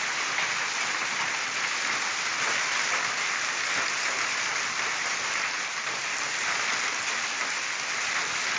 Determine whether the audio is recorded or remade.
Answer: recorded